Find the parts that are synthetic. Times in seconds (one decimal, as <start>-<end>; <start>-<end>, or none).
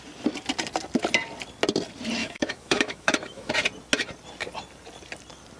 2.2-3.5